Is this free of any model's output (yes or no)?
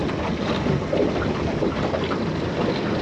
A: no